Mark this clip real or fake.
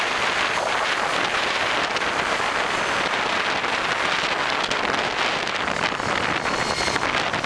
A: real